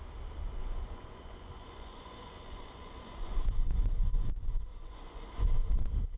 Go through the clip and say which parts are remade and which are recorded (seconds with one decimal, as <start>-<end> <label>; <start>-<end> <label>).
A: 0.0-0.6 recorded; 0.6-4.3 remade; 4.3-4.7 recorded; 4.7-5.7 remade; 5.7-6.2 recorded